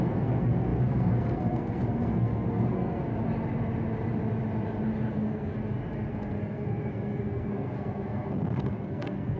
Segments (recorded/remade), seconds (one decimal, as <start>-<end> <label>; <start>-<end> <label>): 0.0-3.1 remade; 3.1-5.1 recorded; 5.1-5.5 remade; 5.5-6.1 recorded; 6.1-9.4 remade